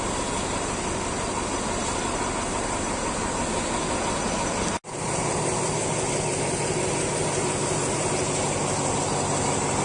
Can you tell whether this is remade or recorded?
recorded